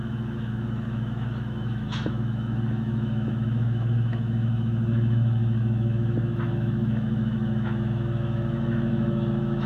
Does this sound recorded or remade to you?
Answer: remade